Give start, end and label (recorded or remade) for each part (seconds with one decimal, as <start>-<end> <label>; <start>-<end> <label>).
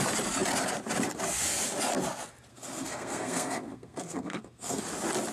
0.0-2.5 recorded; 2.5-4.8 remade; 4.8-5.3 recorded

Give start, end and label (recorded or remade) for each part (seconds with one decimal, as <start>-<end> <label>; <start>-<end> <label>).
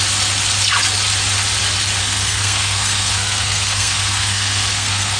0.0-2.0 recorded; 2.0-5.2 remade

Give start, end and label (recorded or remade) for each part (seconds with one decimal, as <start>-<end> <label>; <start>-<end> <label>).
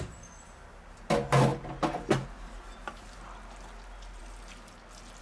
0.0-5.2 recorded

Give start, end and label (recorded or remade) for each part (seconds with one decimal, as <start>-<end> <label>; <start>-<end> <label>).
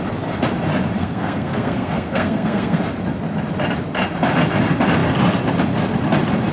0.0-1.0 recorded; 1.0-2.8 remade; 2.8-6.5 recorded